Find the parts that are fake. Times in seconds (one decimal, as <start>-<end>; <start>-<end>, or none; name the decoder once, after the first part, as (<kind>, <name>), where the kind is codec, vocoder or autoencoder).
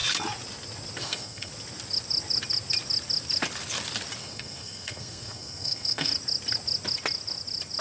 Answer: 1.0-1.5 (codec, SNAC); 4.2-6.1